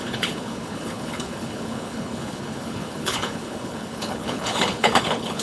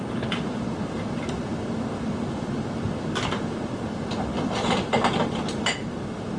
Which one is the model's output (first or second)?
first